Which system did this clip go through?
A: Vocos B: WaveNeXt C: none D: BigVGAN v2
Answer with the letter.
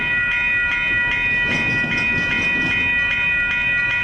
C